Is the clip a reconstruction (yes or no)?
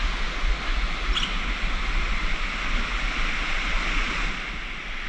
no